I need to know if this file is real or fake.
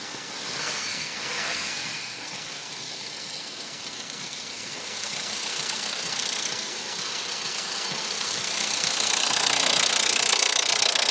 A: fake